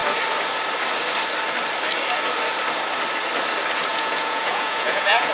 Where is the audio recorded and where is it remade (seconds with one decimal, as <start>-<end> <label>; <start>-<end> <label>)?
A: 0.0-3.9 recorded; 3.9-5.3 remade